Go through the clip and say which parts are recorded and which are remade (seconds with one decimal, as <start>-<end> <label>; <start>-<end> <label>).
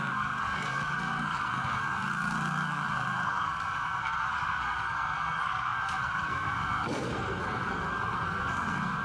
0.0-9.0 remade